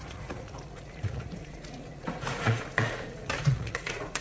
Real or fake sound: fake